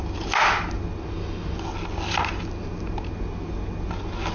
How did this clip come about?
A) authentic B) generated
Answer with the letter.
A